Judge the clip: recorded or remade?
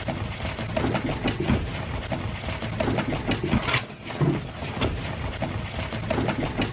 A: recorded